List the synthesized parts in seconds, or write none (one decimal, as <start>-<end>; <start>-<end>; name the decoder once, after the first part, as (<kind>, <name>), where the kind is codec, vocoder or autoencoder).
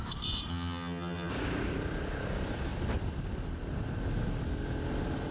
0.5-1.3 (vocoder, HiFi-GAN)